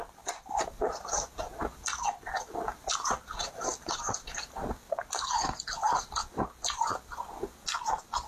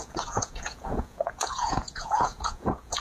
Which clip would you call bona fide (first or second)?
first